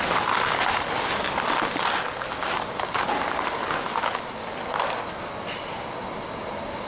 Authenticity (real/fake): real